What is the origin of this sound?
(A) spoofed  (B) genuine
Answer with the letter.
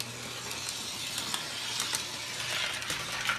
B